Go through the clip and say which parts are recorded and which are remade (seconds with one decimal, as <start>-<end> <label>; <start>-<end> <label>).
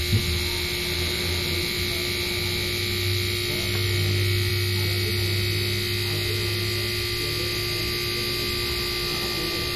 0.0-9.8 recorded